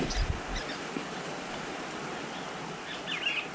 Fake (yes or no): no